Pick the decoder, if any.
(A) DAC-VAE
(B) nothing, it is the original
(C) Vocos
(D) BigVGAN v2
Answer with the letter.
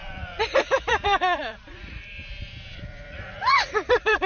C